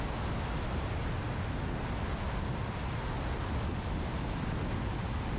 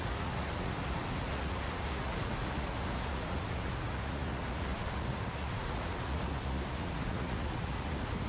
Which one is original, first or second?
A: first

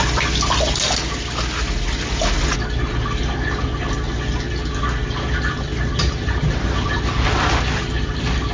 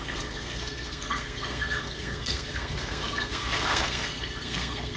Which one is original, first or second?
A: first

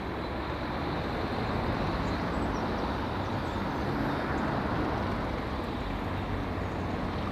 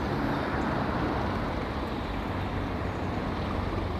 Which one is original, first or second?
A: first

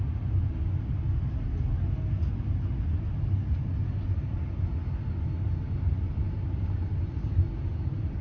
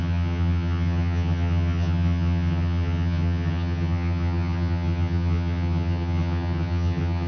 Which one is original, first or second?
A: first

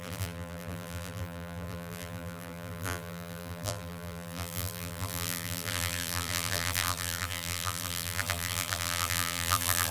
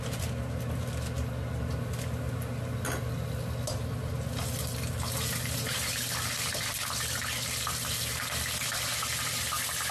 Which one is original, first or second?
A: second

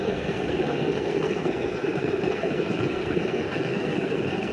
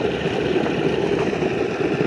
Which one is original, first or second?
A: second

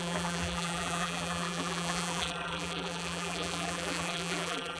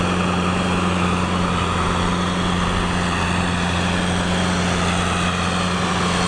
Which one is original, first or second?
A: second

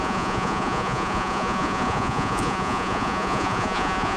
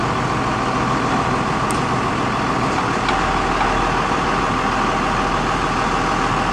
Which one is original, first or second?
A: second